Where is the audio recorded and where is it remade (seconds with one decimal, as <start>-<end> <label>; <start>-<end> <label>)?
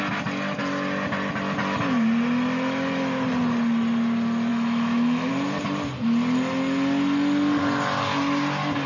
0.0-4.5 recorded; 4.5-5.3 remade; 5.3-8.9 recorded